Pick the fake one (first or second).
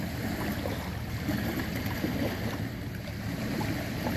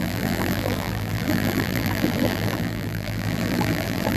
second